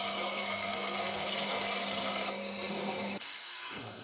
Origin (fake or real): fake